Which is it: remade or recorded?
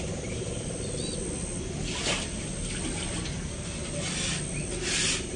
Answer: recorded